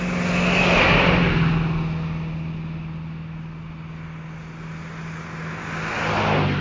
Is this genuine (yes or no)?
yes